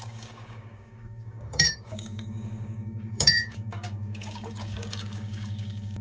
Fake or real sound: fake